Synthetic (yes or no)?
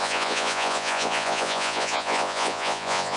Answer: yes